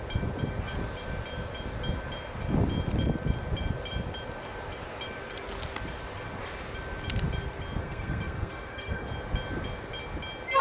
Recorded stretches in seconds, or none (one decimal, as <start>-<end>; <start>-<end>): 0.0-7.8; 9.1-10.6